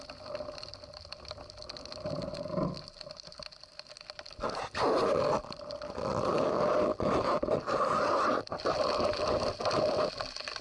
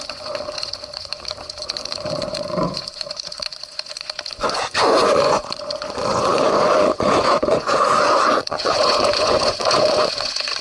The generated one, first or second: second